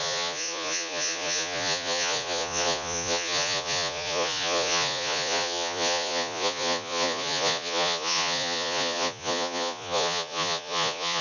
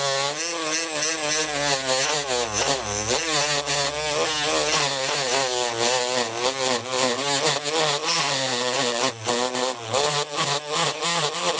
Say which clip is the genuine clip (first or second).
second